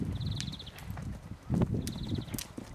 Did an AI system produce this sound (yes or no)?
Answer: no